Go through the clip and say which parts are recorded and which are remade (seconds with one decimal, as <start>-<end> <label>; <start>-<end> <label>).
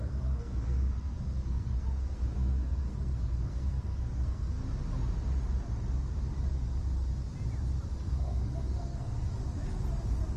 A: 0.0-4.6 remade; 4.6-8.1 recorded; 8.1-9.2 remade; 9.2-10.4 recorded